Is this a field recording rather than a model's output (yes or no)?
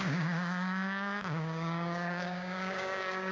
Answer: no